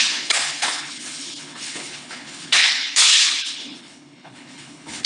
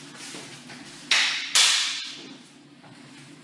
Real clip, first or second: second